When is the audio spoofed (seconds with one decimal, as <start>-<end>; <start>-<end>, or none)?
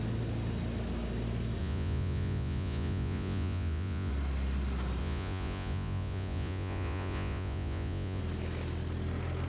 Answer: 1.6-4.1; 5.0-8.2